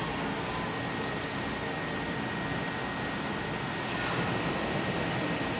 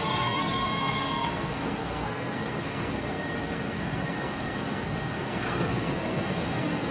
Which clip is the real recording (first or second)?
first